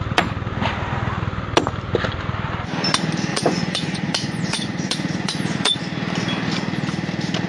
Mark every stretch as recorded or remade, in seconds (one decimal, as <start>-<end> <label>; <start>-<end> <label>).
0.0-3.3 recorded; 3.3-5.8 remade; 5.8-7.5 recorded